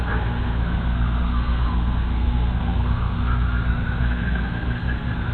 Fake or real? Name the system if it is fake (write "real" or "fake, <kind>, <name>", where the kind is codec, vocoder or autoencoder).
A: fake, codec, SNAC